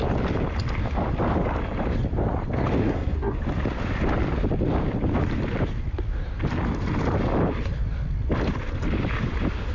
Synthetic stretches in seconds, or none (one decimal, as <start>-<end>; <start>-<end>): 2.8-3.4